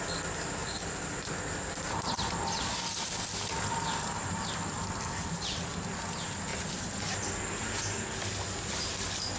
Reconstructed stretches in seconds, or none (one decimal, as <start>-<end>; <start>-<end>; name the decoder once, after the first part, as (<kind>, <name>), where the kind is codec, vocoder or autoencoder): none